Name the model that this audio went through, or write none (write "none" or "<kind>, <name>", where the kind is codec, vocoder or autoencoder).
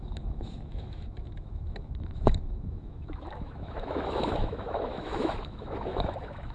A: autoencoder, DAC-VAE